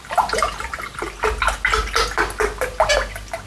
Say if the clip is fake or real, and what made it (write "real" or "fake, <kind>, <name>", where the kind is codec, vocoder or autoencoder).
real